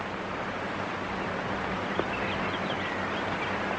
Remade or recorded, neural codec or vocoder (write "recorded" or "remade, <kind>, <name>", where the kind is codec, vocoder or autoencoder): recorded